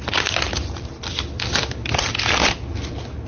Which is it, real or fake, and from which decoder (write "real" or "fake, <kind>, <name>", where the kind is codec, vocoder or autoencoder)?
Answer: real